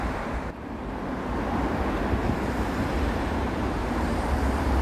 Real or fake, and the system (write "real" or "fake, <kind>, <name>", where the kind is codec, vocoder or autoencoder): fake, vocoder, BigVGAN v2